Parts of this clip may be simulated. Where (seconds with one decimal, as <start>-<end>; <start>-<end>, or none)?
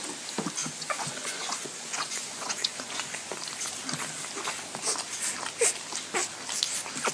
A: 0.6-3.3